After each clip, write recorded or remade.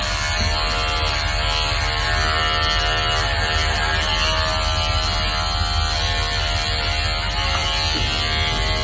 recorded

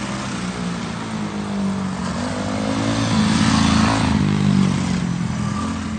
recorded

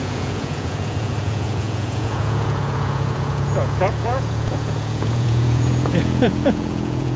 remade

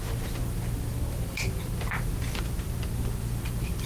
recorded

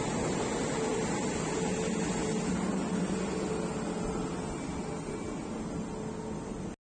recorded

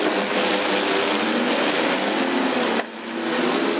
recorded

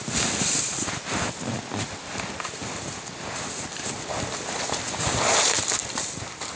recorded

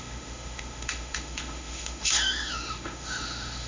remade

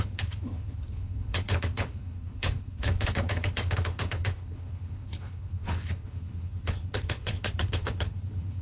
remade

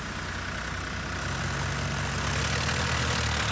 recorded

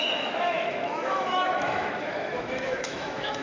remade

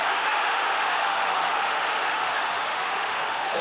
remade